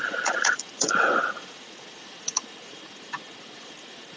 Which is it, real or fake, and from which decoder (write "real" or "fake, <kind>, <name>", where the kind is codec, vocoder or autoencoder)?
fake, vocoder, Vocos